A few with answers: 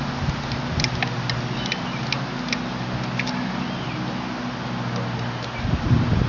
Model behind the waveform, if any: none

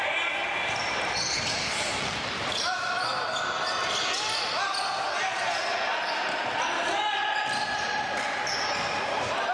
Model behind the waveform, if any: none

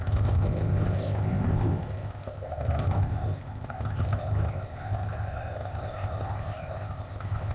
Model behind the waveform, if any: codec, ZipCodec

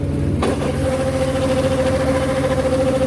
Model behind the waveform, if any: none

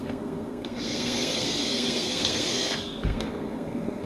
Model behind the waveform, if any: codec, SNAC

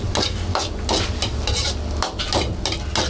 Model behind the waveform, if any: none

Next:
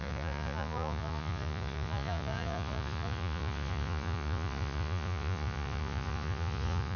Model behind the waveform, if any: vocoder, Vocos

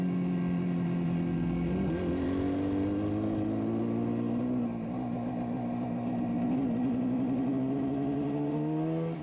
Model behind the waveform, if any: none